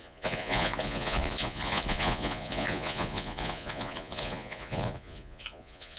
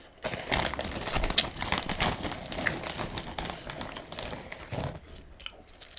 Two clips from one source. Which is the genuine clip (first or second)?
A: second